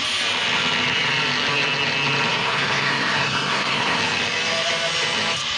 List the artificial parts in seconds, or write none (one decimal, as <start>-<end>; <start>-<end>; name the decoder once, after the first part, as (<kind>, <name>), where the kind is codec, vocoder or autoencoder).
2.3-4.0 (codec, SNAC)

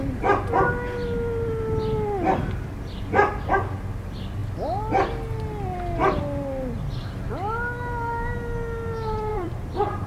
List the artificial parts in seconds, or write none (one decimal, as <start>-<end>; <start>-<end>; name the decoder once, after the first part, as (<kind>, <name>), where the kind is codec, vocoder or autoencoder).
9.3-10.1 (vocoder, BigVGAN v2)

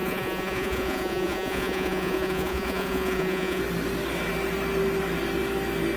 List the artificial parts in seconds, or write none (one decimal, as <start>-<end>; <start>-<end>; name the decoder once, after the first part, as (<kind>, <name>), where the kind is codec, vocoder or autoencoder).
0.0-3.6 (vocoder, Vocos)

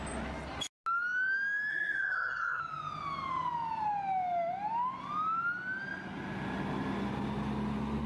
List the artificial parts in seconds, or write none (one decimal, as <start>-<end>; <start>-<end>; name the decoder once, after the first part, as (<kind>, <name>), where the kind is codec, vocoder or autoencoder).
1.7-2.6 (codec, SNAC)

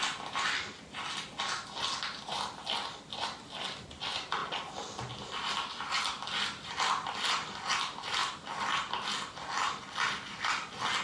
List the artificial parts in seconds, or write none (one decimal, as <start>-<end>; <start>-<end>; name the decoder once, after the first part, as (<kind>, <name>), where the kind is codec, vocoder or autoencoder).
none

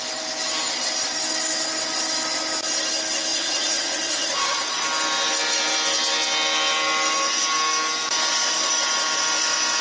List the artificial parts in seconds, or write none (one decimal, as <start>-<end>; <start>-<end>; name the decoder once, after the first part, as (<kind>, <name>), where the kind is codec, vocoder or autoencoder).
3.3-4.8 (vocoder, Vocos)

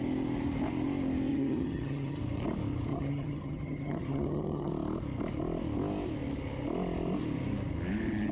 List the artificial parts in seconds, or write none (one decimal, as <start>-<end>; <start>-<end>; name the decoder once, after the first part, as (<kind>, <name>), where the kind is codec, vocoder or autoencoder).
1.3-2.2 (vocoder, HiFi-GAN); 2.9-4.7

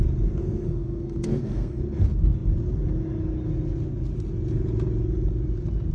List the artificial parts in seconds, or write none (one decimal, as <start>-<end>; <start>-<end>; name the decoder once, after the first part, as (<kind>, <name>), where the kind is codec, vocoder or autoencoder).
0.4-1.8 (codec, SNAC)